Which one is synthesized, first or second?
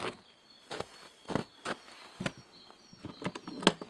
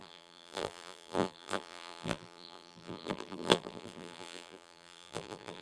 second